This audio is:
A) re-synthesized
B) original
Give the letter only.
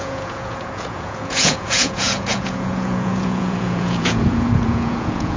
A